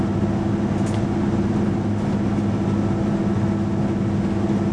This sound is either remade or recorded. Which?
recorded